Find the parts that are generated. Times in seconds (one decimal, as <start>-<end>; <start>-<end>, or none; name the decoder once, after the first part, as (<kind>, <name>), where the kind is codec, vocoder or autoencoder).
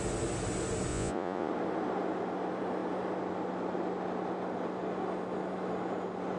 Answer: 0.9-1.5 (vocoder, Vocos)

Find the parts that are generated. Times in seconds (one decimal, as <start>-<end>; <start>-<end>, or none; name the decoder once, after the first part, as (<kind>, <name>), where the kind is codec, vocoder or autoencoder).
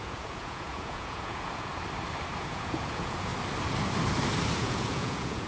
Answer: 0.0-1.7 (vocoder, Vocos); 2.4-3.3; 4.6-5.5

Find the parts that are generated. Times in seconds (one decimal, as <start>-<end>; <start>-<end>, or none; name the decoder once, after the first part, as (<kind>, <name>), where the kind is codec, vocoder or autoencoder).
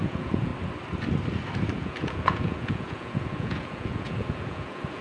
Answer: 0.0-0.5 (vocoder, Vocos); 1.8-5.0